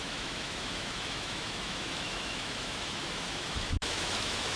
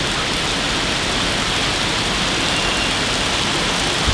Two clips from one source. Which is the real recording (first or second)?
second